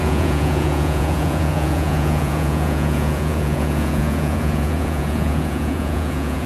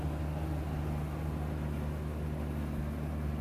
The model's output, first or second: first